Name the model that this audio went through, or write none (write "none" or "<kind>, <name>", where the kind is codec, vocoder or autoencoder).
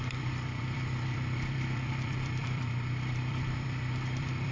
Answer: vocoder, BigVGAN v2